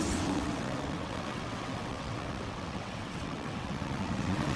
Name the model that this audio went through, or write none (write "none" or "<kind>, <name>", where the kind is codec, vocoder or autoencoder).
vocoder, WaveNeXt